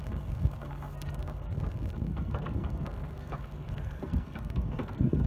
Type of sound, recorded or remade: remade